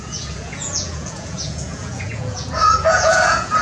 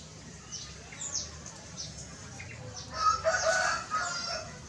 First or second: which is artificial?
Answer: first